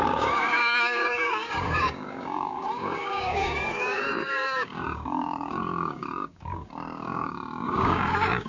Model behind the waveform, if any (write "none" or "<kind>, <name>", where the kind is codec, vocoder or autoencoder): codec, DAC